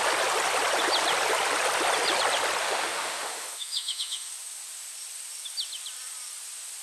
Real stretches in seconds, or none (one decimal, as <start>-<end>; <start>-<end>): 0.0-2.6; 4.3-6.8